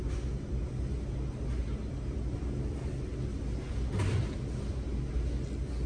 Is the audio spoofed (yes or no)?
no